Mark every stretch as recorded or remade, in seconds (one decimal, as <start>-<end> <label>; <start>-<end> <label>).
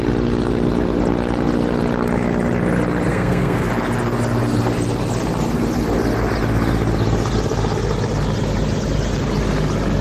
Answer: 0.0-3.1 recorded; 3.1-3.7 remade; 3.7-10.0 recorded